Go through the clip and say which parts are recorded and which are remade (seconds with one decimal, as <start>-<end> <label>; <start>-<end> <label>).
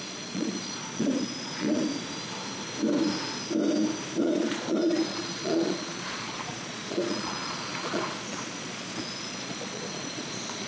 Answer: 0.0-1.9 remade; 1.9-4.2 recorded; 4.2-10.7 remade